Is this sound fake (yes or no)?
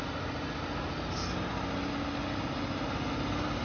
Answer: no